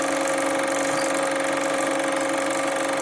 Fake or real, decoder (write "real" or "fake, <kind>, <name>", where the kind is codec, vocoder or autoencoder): real